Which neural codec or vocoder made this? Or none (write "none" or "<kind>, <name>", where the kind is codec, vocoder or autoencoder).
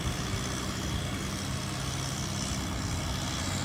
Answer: none